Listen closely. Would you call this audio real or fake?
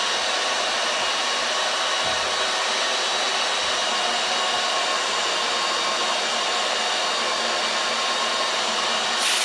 real